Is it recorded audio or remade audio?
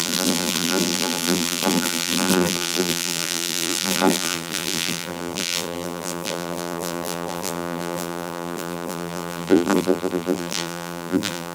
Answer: remade